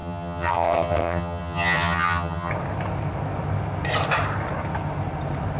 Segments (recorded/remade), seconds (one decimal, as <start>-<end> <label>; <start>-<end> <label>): 0.0-2.5 remade; 2.5-5.6 recorded